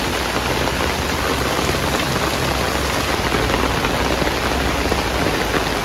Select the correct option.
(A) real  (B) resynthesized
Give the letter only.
A